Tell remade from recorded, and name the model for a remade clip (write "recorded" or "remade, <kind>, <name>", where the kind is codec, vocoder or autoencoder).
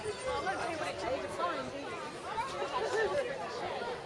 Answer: recorded